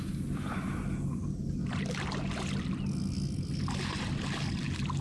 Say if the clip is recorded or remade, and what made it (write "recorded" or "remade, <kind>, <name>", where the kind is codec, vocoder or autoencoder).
recorded